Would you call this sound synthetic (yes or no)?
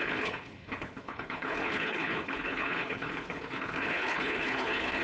yes